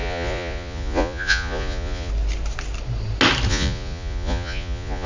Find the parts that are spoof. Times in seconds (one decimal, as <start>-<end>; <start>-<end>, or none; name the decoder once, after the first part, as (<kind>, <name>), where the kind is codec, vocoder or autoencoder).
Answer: 0.0-2.1 (vocoder, Vocos); 3.5-5.1